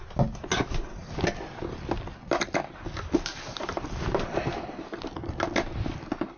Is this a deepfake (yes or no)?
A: no